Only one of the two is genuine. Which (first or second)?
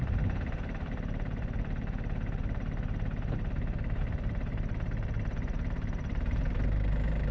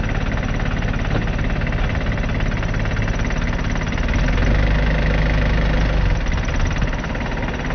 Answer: second